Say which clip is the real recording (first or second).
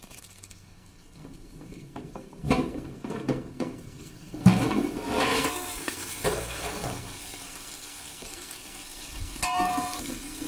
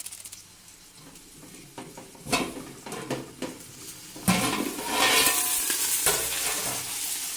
second